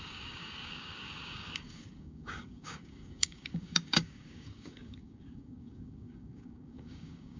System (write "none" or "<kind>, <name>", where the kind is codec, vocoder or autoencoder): codec, DAC